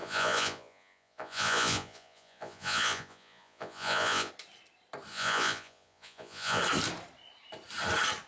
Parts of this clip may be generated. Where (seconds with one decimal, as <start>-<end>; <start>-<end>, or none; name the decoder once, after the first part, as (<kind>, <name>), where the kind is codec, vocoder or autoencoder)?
0.0-4.3 (vocoder, Vocos); 5.1-6.6